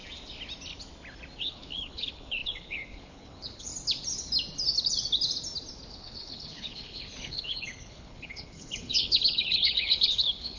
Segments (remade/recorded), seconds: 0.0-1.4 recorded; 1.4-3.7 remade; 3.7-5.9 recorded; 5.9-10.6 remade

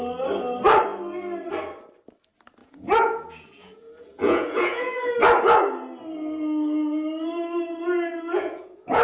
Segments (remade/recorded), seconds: 0.0-2.6 recorded; 2.6-5.2 remade; 5.2-8.3 recorded; 8.3-9.0 remade

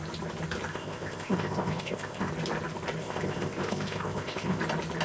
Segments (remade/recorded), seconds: 0.0-0.7 recorded; 0.7-2.3 remade; 2.3-3.0 recorded; 3.0-4.6 remade; 4.6-5.0 recorded

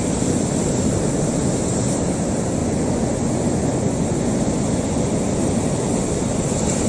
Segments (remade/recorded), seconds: 0.0-2.6 recorded; 2.6-5.1 remade; 5.1-6.9 recorded

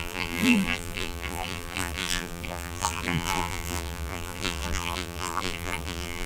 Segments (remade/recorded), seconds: 0.0-6.3 remade